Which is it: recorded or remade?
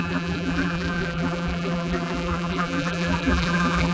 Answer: remade